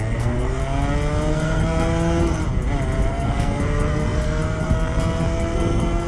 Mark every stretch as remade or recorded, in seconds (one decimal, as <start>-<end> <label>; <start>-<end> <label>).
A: 0.0-0.6 remade; 0.6-1.3 recorded; 1.3-2.4 remade; 2.4-3.1 recorded; 3.1-6.1 remade